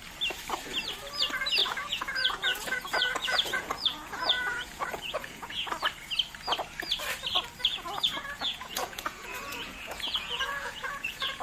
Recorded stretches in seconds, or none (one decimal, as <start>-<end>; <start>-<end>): 0.0-1.6; 5.7-7.7